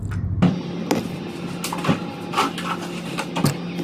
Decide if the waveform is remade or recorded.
recorded